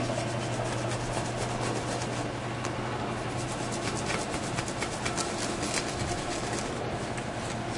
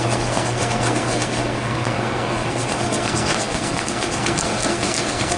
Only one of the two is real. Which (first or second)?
first